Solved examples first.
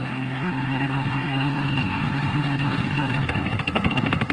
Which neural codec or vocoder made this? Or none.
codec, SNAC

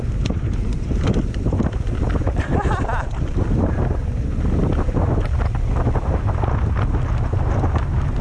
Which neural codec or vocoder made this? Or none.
none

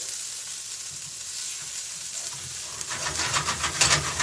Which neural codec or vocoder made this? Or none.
none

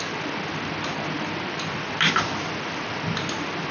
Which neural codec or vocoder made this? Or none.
none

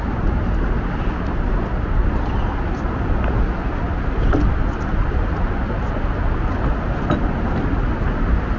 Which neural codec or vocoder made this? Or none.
none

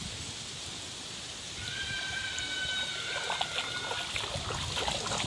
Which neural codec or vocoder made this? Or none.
none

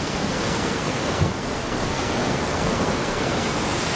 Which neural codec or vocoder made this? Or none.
codec, SNAC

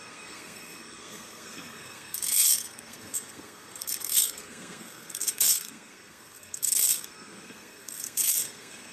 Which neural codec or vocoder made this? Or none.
codec, SNAC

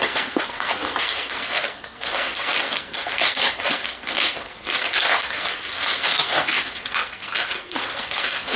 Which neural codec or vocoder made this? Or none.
codec, SNAC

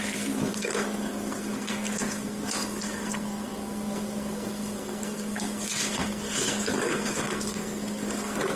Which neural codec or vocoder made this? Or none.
codec, SNAC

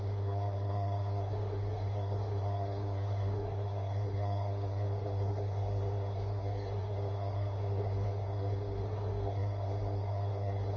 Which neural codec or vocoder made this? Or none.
codec, SNAC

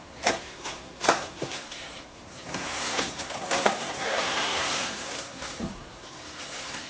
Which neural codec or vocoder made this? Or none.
codec, SNAC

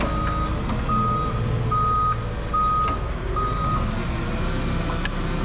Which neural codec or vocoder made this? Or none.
none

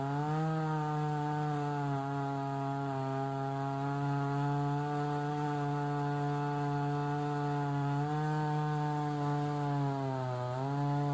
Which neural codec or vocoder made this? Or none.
none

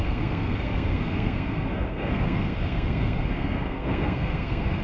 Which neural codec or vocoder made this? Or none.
codec, SNAC